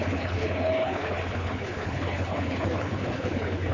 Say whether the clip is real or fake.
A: fake